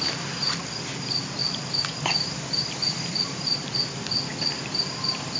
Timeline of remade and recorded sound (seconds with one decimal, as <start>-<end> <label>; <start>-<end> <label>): 0.0-1.4 recorded; 1.4-3.7 remade; 3.7-4.3 recorded; 4.3-5.4 remade